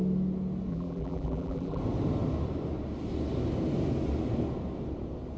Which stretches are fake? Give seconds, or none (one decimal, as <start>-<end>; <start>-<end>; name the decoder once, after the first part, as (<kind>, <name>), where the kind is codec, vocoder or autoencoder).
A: 0.7-1.8 (vocoder, BigVGAN v2)